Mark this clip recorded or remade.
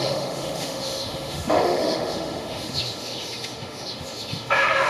remade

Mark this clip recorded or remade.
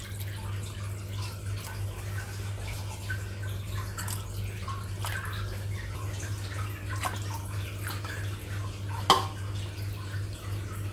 recorded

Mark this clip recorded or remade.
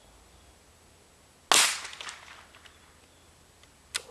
recorded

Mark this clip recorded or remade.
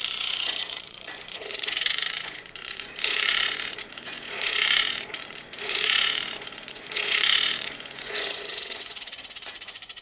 remade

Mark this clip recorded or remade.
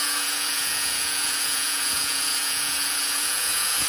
remade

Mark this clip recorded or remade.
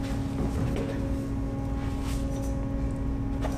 recorded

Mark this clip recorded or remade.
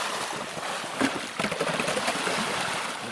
remade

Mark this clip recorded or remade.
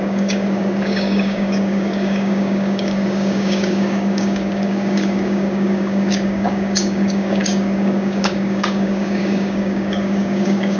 remade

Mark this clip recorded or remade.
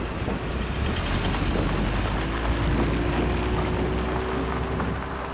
recorded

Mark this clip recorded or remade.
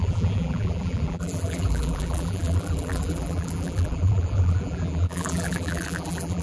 remade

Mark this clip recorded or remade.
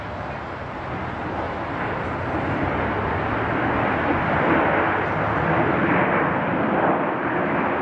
recorded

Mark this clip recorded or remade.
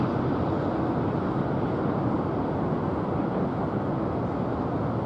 recorded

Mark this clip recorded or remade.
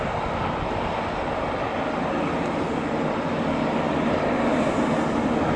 recorded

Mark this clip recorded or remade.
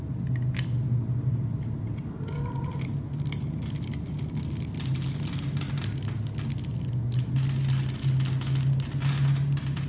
recorded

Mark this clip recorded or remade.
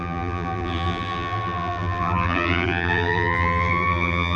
remade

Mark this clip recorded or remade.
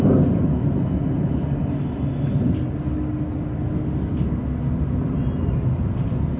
recorded